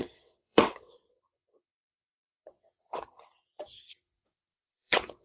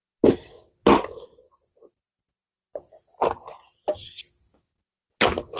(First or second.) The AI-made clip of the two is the first